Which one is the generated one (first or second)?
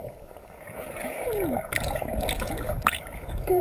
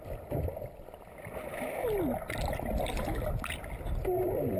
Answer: first